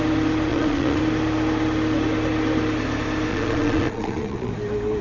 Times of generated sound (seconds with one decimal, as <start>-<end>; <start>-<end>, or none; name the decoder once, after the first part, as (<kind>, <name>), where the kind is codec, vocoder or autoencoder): 0.5-1.0 (vocoder, Vocos); 3.3-4.5